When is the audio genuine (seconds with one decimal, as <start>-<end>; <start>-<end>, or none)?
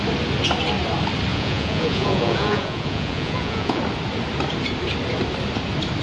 0.0-1.3; 3.8-6.0